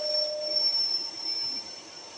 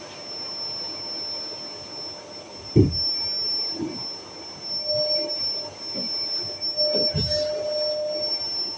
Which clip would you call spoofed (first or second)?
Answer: first